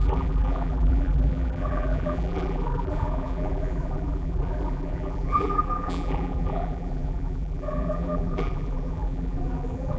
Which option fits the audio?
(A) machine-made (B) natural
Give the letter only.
A